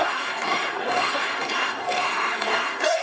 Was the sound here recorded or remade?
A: remade